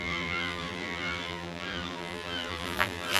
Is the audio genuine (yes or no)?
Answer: no